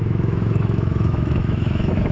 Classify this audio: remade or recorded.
remade